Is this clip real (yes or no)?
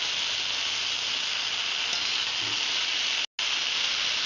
yes